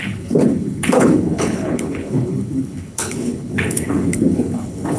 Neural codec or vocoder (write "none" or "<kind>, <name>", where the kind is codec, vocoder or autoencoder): codec, HILCodec